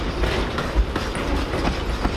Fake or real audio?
real